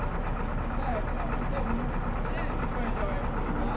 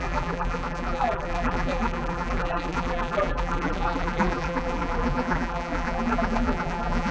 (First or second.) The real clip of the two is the first